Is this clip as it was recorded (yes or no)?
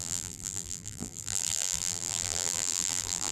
no